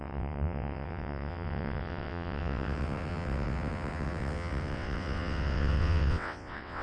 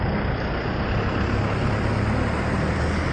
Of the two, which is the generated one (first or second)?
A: first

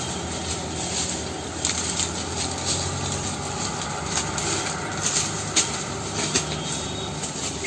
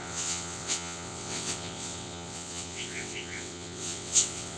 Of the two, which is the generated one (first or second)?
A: second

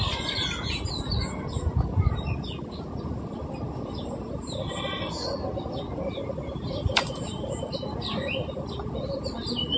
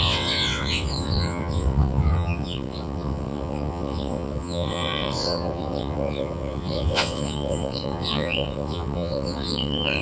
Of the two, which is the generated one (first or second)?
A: second